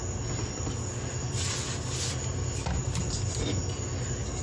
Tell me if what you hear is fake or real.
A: real